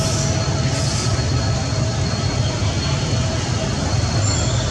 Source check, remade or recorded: recorded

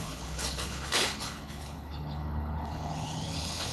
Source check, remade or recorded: remade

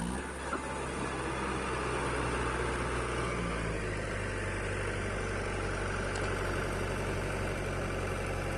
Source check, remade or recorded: recorded